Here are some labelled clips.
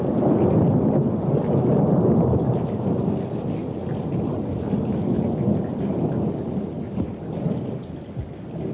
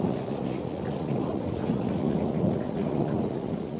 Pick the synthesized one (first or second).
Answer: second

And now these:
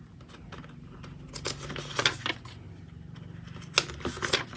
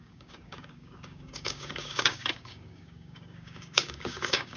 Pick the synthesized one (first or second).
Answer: second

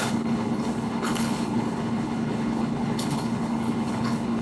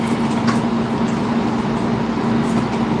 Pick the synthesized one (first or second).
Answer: first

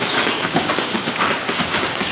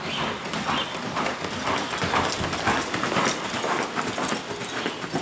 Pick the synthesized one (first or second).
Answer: first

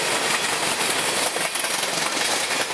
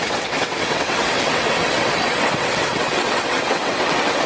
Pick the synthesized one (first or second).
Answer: second